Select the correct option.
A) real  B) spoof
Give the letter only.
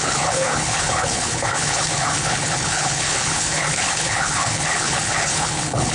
B